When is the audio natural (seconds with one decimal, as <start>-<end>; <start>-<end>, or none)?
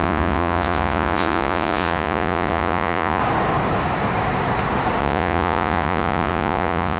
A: 3.2-5.0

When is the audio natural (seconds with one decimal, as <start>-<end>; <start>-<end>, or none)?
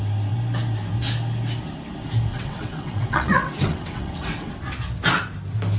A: 0.0-2.3; 4.5-5.8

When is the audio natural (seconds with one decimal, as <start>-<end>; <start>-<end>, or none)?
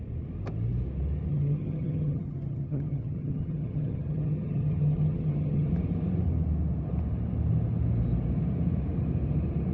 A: 0.0-1.3; 5.7-9.7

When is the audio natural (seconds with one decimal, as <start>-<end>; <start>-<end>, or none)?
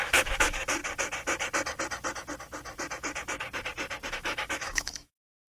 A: 0.8-4.1